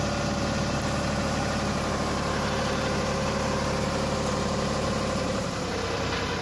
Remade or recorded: remade